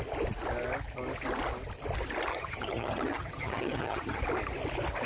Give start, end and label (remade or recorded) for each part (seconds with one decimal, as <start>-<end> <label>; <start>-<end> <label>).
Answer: 0.0-2.3 recorded; 2.3-4.2 remade; 4.2-5.1 recorded